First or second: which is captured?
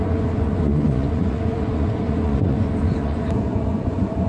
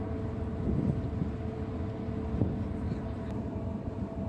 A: second